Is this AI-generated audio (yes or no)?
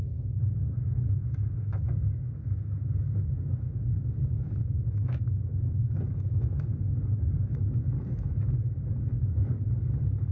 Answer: yes